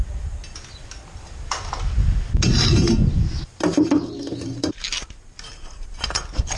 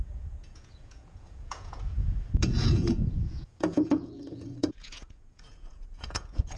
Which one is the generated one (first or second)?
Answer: second